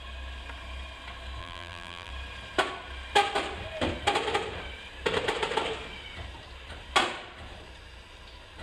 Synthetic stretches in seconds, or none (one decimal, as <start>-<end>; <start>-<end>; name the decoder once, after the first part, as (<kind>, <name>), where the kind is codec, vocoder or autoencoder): 1.4-2.1 (vocoder, BigVGAN v2)